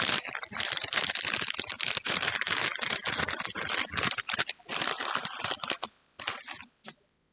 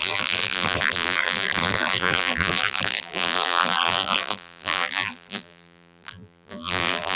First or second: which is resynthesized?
second